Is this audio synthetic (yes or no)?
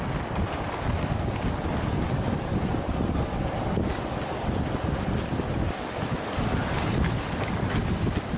no